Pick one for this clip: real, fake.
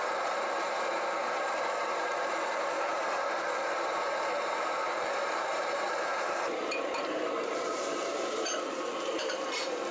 fake